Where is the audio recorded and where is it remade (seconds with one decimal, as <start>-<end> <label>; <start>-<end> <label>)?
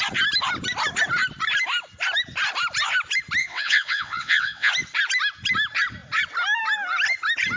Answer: 0.0-3.4 recorded; 3.4-4.7 remade; 4.7-7.6 recorded